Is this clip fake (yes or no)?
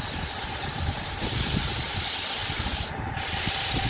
no